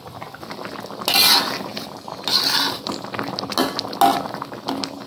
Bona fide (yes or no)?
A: yes